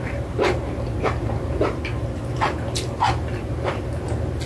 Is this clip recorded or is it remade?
recorded